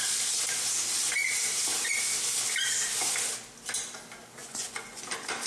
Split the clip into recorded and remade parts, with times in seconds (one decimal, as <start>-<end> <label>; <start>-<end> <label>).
0.0-4.4 recorded; 4.4-5.0 remade; 5.0-5.5 recorded